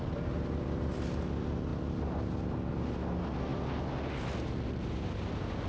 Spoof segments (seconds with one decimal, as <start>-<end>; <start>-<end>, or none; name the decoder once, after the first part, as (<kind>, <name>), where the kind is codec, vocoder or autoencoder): none